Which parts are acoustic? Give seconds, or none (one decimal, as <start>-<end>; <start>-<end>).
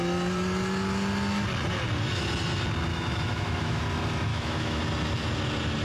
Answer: 0.0-2.9; 3.8-4.3; 4.8-5.8